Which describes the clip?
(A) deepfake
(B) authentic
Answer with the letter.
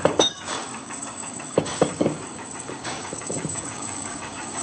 A